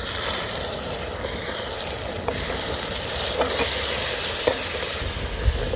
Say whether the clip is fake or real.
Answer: real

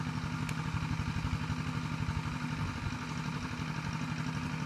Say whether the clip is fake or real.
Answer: real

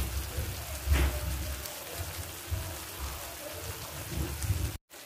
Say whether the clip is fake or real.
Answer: real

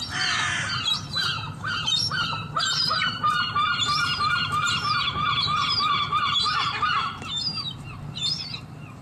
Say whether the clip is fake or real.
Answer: fake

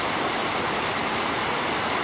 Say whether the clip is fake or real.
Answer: fake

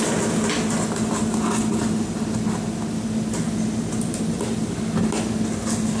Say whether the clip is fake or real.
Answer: real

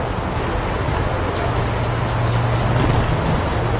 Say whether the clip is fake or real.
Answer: real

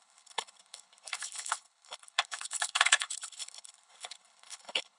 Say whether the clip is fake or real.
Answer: fake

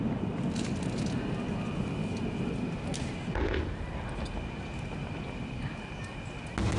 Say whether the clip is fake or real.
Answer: real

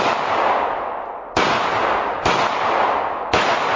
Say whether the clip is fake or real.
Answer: real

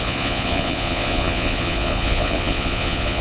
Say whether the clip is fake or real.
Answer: fake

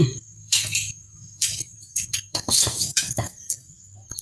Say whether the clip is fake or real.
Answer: fake